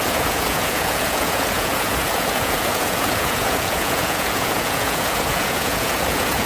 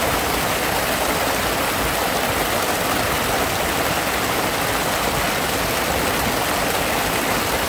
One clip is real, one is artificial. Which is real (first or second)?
second